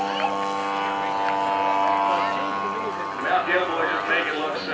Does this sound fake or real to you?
real